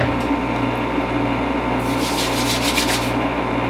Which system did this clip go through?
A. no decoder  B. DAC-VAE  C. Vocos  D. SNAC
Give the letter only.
A